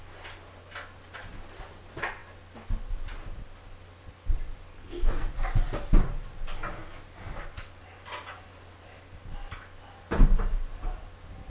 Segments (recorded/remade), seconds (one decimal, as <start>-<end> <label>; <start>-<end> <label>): 0.0-4.7 recorded; 4.7-5.3 remade; 5.3-11.5 recorded